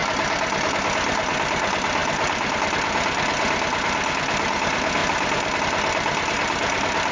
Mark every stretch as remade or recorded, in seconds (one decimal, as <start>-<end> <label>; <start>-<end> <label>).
0.0-2.0 recorded; 2.0-2.6 remade; 2.6-7.1 recorded